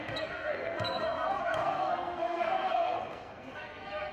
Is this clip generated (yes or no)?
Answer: yes